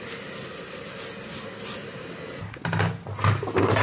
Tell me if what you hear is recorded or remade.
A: recorded